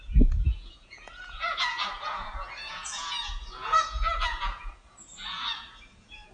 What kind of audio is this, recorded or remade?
remade